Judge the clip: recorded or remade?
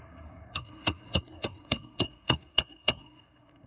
remade